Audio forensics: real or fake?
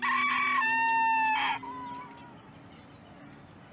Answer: real